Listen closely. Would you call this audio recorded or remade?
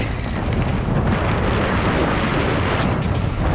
recorded